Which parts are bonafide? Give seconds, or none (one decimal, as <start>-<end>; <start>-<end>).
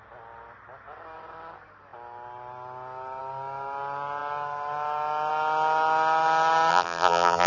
0.0-6.7